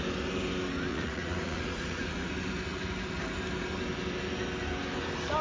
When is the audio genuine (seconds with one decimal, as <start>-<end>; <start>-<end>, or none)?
0.0-0.9; 2.3-5.4